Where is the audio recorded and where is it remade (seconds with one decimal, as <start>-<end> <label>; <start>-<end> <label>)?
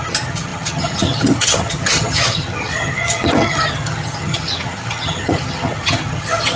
0.0-6.6 remade